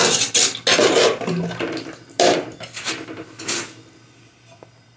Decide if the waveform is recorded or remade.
recorded